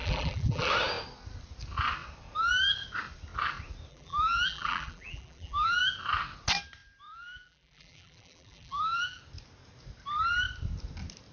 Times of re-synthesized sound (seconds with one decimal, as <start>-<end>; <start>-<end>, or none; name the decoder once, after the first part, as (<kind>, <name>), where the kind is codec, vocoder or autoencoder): 0.0-0.7 (vocoder, BigVGAN v2); 3.9-5.8; 7.1-9.2